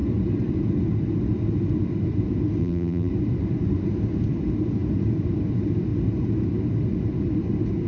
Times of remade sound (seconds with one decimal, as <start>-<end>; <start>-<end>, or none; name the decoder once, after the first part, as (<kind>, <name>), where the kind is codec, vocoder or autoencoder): 2.6-3.1 (vocoder, BigVGAN v2)